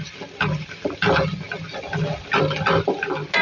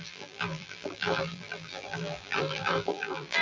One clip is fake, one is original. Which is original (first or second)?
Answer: first